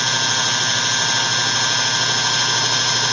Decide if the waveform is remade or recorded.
recorded